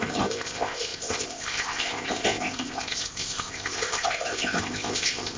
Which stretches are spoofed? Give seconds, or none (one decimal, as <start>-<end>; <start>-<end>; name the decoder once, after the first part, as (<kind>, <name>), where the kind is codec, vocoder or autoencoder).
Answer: 0.0-5.4 (codec, ZipCodec)

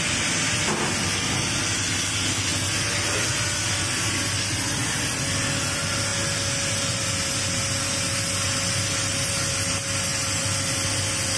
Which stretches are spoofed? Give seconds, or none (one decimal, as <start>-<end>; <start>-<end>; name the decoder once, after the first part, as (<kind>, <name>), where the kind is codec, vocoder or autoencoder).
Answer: none

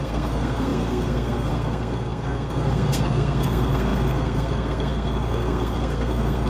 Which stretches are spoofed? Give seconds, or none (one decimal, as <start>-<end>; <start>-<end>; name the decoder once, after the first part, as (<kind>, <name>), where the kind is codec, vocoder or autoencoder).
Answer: 0.0-6.5 (codec, SNAC)

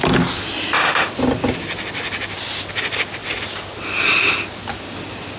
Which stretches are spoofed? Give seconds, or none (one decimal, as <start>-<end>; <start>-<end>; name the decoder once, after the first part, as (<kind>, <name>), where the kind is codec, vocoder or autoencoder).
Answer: none

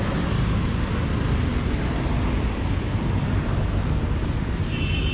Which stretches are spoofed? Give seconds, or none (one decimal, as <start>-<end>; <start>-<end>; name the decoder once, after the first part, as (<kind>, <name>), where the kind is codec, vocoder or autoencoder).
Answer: none